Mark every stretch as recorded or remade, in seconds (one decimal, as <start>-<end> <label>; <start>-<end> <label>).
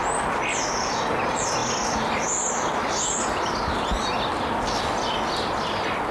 0.0-6.1 recorded